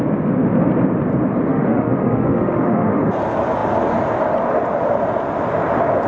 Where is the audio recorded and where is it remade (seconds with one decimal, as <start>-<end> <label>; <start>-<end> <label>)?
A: 0.0-1.5 recorded; 1.5-3.0 remade; 3.0-6.1 recorded

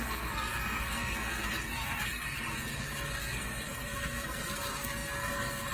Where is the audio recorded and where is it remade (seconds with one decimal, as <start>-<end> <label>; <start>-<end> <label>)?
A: 0.0-5.7 remade

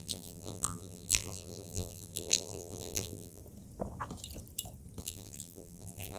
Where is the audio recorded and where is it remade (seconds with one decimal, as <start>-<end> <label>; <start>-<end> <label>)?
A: 0.0-3.4 remade; 3.4-5.0 recorded; 5.0-6.2 remade

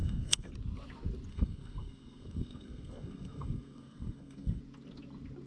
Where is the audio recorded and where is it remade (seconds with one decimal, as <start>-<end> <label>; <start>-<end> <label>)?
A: 0.0-0.5 remade; 0.5-1.3 recorded; 1.3-4.6 remade; 4.6-5.5 recorded

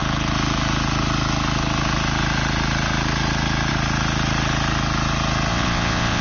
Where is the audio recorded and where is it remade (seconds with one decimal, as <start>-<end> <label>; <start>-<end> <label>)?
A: 0.0-5.5 recorded; 5.5-6.2 remade

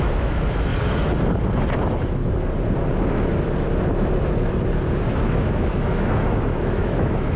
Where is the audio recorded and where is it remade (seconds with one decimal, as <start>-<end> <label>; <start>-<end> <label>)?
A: 0.0-0.7 remade; 0.7-5.1 recorded; 5.1-7.4 remade

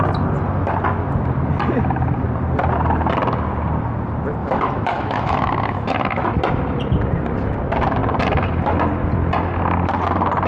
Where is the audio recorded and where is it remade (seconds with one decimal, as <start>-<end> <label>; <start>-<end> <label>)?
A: 0.0-4.4 recorded; 4.4-6.4 remade; 6.4-10.5 recorded